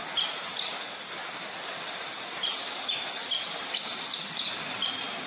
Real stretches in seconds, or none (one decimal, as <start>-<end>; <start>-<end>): 0.0-5.3